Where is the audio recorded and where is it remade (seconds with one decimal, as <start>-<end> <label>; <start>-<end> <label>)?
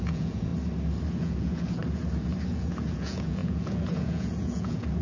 0.0-0.5 remade; 0.5-1.2 recorded; 1.2-1.8 remade; 1.8-2.5 recorded; 2.5-5.0 remade